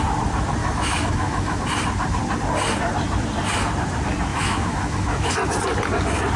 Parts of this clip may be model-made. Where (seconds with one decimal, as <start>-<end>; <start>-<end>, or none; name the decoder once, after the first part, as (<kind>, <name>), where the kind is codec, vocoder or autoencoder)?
0.6-1.6 (autoencoder, DAC-VAE); 4.3-5.3